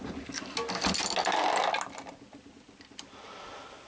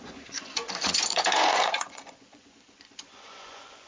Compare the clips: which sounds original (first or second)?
first